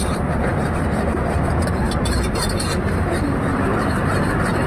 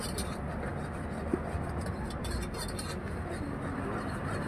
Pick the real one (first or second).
second